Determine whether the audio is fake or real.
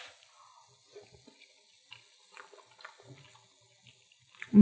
real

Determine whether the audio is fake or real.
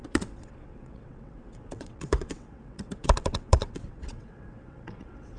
fake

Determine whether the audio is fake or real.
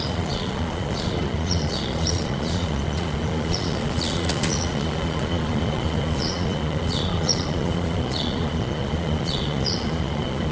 fake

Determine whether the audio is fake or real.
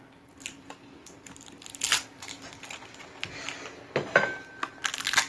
real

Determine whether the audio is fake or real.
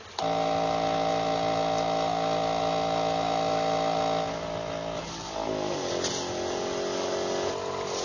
real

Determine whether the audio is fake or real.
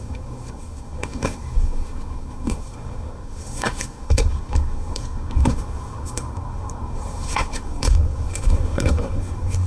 fake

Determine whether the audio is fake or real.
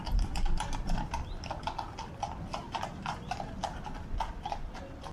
real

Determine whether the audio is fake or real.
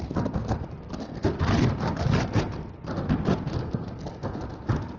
real